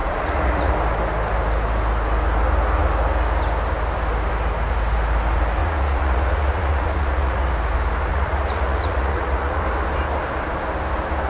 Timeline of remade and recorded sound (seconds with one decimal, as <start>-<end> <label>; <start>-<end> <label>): 0.0-0.7 remade; 0.7-5.6 recorded; 5.6-7.5 remade; 7.5-8.1 recorded; 8.1-9.6 remade; 9.6-11.3 recorded